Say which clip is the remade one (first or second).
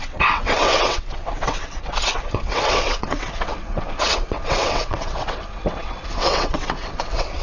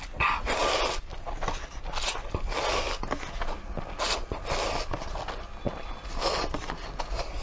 first